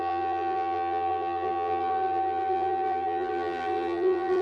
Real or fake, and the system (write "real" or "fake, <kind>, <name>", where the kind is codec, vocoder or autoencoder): fake, vocoder, BigVGAN v2